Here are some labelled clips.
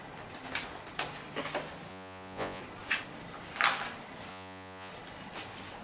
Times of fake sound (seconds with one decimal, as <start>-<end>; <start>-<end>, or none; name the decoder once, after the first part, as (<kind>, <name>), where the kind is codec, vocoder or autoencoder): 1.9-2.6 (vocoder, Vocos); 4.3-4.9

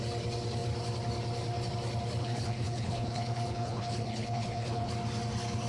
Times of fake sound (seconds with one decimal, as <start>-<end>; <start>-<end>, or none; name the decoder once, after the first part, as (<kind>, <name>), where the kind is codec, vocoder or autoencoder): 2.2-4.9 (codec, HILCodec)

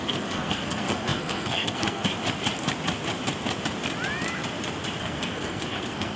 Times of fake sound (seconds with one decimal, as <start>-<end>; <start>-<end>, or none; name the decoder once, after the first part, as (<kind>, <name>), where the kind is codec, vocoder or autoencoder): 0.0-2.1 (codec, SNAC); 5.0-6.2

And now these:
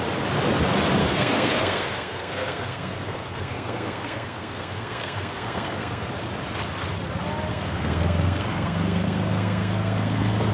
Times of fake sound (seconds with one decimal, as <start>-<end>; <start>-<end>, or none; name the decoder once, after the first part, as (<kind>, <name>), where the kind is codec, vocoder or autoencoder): 1.0-6.1 (codec, SNAC); 7.5-10.5

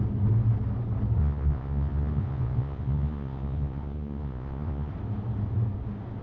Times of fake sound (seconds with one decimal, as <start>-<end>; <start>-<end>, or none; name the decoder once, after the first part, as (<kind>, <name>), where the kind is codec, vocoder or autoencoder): 1.2-4.9 (vocoder, Vocos)

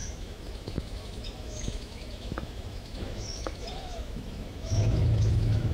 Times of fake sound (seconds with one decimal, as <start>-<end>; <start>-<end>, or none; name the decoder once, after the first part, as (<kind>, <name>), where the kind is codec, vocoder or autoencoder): 0.0-5.7 (autoencoder, DAC-VAE)

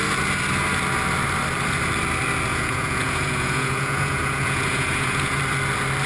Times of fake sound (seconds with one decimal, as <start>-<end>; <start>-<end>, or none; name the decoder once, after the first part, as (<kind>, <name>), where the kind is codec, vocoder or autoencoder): 2.5-5.4 (vocoder, Vocos)